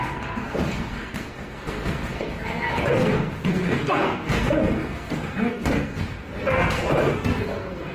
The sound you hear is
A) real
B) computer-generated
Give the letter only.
B